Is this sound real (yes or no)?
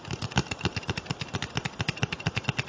yes